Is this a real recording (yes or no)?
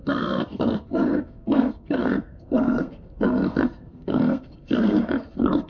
no